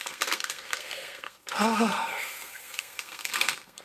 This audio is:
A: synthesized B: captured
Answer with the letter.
A